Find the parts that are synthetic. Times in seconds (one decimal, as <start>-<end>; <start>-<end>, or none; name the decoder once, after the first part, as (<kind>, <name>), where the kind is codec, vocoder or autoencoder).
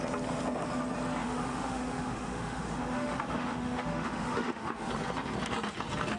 1.2-4.9 (autoencoder, DAC-VAE)